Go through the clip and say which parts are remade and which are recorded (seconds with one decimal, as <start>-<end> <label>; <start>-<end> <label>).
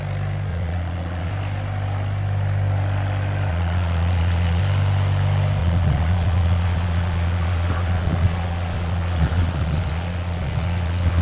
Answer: 0.0-0.5 recorded; 0.5-1.3 remade; 1.3-3.5 recorded; 3.5-4.6 remade; 4.6-5.6 recorded; 5.6-11.2 remade